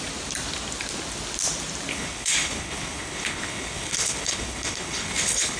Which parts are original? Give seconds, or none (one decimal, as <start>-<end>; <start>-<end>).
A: 0.0-1.9